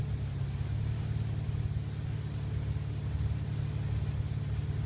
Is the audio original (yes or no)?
yes